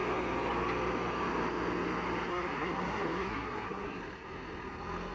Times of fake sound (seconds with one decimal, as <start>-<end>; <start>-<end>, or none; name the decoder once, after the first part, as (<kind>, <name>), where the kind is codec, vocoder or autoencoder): 2.3-4.0 (codec, SNAC)